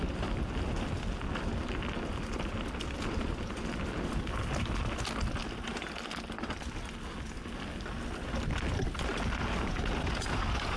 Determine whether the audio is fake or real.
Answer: real